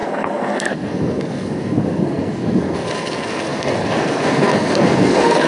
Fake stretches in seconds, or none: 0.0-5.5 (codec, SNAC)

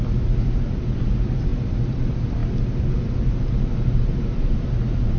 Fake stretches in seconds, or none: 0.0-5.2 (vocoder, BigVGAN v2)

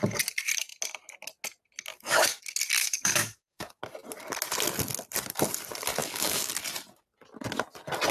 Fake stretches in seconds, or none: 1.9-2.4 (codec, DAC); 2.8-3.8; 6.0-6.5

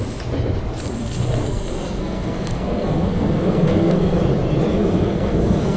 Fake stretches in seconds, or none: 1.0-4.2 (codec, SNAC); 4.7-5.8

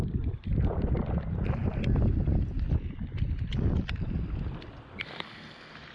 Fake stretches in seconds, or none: 0.0-1.6 (vocoder, BigVGAN v2); 4.5-5.9

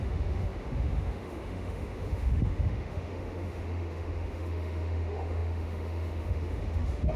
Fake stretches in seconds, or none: 0.0-7.2 (autoencoder, DAC-VAE)